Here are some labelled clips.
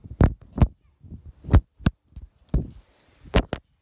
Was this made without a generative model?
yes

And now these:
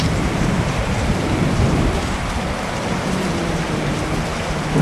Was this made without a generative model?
no